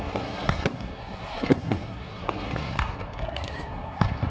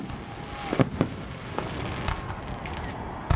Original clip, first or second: second